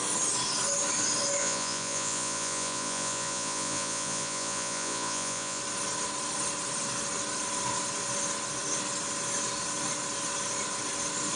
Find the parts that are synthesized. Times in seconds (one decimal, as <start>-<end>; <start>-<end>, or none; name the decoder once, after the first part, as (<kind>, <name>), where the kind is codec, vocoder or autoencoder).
1.4-5.6 (vocoder, Vocos)